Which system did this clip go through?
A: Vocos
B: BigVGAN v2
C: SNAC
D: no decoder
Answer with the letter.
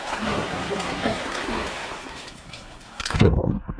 C